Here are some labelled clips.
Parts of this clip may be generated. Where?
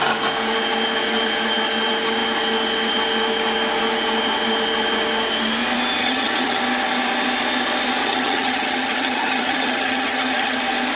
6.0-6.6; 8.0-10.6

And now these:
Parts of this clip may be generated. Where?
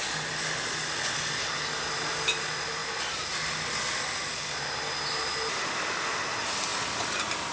none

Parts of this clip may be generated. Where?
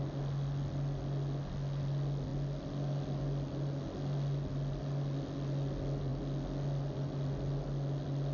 none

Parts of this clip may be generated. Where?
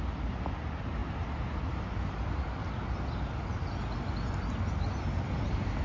none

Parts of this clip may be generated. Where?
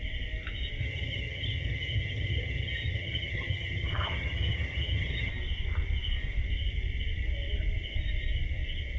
0.8-5.3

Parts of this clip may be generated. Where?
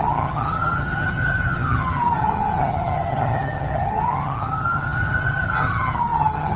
0.0-6.6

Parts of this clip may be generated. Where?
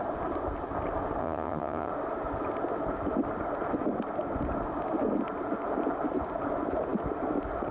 1.2-1.9